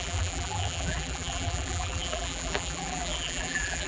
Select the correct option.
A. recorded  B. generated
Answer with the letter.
B